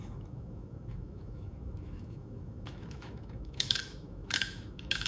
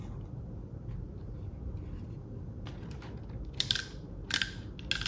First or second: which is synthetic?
first